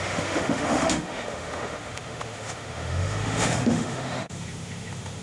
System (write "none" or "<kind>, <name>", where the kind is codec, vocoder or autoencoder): autoencoder, DAC-VAE